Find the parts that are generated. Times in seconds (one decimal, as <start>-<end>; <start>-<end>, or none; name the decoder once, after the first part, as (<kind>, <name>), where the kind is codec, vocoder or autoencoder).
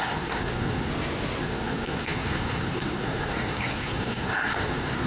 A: 0.0-0.9 (codec, SNAC); 1.4-5.1